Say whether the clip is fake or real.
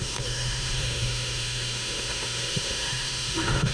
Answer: fake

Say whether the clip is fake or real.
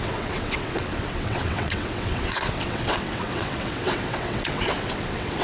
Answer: fake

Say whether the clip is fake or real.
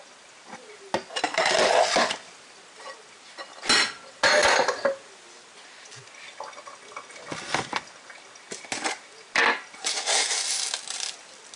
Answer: real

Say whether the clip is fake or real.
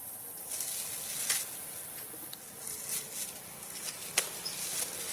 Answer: real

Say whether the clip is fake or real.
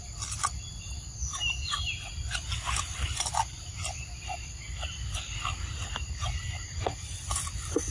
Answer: real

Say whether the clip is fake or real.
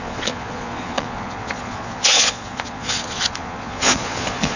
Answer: fake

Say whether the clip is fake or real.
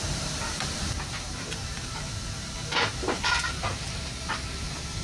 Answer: fake